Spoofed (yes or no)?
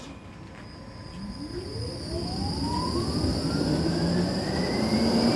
no